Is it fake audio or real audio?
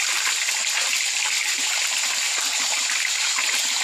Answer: real